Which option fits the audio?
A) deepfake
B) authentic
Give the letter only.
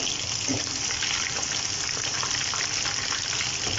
B